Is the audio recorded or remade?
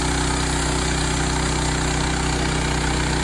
recorded